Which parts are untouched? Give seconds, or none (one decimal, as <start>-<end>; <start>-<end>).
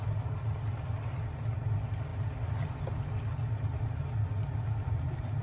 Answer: 0.0-5.4